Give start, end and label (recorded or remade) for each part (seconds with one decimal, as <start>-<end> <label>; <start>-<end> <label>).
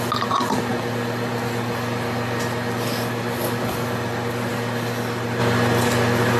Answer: 0.0-6.4 recorded